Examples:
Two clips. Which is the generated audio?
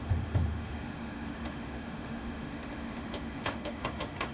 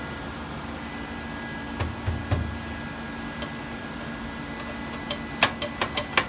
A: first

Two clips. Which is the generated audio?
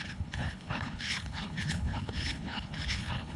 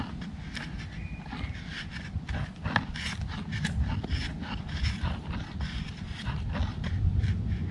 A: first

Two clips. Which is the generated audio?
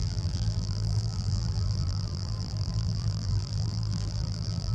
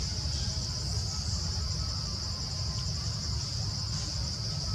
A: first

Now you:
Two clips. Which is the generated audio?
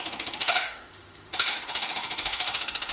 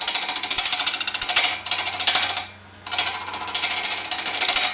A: first